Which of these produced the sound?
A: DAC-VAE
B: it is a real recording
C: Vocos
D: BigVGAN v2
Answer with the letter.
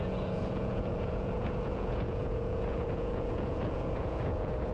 C